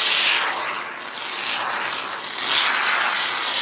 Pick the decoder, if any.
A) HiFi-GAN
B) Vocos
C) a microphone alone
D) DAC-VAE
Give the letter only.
C